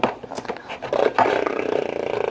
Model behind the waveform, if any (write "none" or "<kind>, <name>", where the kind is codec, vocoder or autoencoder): none